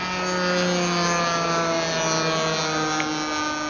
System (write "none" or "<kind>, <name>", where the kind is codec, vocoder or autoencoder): none